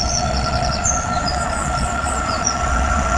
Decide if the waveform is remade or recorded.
remade